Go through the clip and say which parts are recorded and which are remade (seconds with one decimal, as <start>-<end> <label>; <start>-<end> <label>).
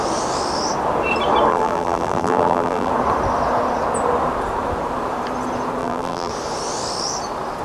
0.0-1.5 recorded; 1.5-2.9 remade; 2.9-5.8 recorded; 5.8-6.3 remade; 6.3-7.6 recorded